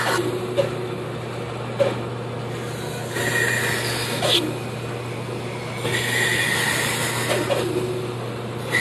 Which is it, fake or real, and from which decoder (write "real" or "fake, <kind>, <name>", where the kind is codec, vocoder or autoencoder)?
real